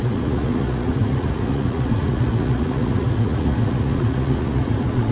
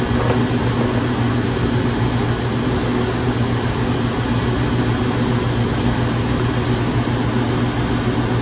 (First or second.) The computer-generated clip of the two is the first